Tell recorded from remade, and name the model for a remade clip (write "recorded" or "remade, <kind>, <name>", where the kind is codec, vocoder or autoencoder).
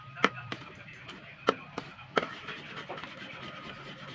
recorded